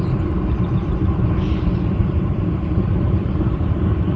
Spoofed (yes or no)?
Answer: yes